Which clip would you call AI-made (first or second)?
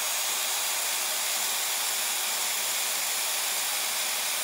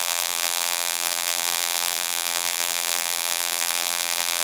second